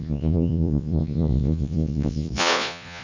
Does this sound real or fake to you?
fake